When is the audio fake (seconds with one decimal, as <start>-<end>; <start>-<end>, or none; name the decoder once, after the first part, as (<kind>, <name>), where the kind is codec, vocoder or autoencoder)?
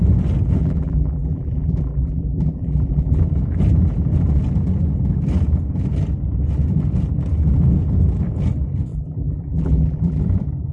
0.6-3.2 (vocoder, BigVGAN v2); 8.9-10.2